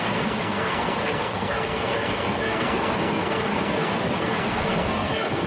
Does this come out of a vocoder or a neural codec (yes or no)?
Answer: yes